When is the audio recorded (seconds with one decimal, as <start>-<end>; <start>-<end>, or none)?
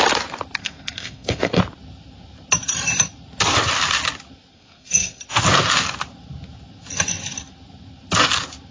0.0-0.6; 1.6-4.5; 5.2-8.7